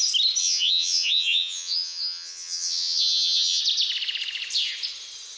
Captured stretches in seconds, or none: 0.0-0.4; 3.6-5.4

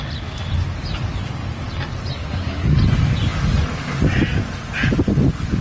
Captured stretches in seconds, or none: 0.0-2.2; 2.8-5.6

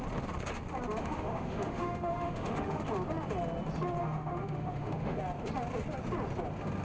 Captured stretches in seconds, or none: 0.0-1.0; 2.8-4.0; 5.2-6.8

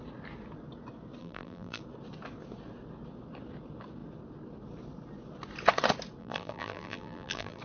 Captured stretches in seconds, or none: 0.0-1.2; 1.8-6.2

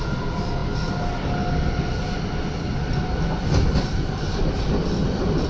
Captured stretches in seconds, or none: 0.0-5.5

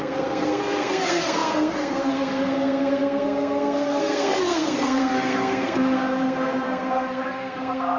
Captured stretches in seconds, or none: none